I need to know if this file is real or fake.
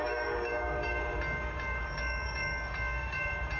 fake